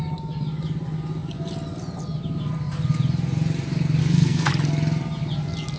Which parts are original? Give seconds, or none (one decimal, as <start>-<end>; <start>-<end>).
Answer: 0.0-4.0; 4.5-5.8

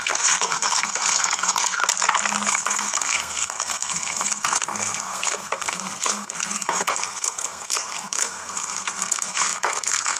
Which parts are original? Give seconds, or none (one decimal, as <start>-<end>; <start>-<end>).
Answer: 1.8-2.5

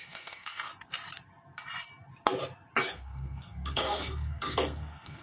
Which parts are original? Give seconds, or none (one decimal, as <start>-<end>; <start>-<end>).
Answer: 0.7-2.9

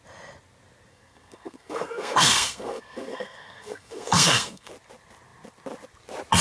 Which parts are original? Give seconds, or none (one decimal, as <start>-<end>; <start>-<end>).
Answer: 0.0-0.9; 4.7-6.4